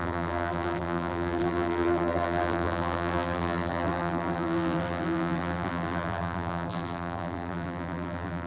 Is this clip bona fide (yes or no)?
no